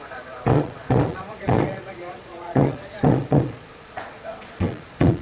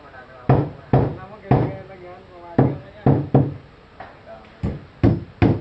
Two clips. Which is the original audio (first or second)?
second